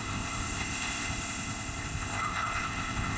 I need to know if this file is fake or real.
fake